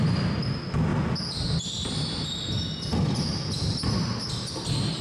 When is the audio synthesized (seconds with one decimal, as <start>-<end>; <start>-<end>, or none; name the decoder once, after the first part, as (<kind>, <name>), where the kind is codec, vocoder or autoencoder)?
none